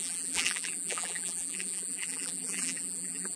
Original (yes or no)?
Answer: no